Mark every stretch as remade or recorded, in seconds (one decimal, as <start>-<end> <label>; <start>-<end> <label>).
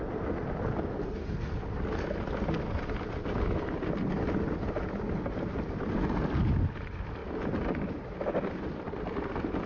0.0-9.7 recorded